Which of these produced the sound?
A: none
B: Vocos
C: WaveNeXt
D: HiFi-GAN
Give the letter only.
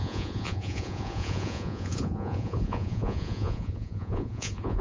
B